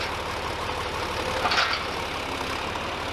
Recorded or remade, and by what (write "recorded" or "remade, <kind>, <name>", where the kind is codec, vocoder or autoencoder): recorded